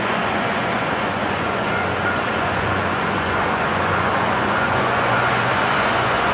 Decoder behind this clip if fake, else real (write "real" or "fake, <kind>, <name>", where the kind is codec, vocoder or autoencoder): fake, vocoder, Vocos